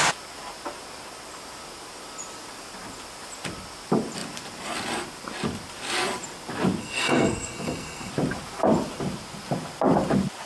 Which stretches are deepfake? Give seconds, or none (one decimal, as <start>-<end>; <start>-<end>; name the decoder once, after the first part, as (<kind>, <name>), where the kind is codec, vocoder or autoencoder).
6.8-8.1 (codec, SNAC)